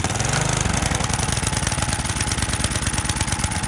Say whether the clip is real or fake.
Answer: real